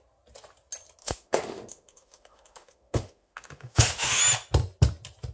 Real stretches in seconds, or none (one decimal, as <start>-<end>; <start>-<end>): 0.0-1.0; 4.2-5.3